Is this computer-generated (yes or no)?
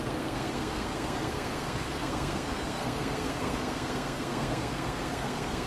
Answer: yes